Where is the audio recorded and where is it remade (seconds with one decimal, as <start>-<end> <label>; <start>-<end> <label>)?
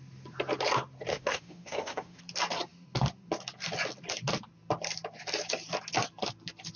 0.0-1.1 recorded; 1.1-2.2 remade; 2.2-6.8 recorded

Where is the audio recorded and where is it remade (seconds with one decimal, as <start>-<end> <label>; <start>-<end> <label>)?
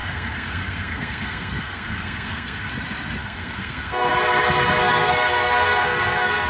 0.0-2.7 remade; 2.7-3.2 recorded; 3.2-4.1 remade; 4.1-4.8 recorded; 4.8-6.5 remade